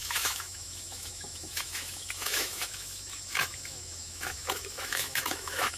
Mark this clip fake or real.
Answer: fake